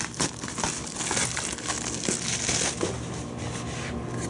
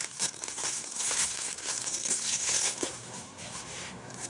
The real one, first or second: first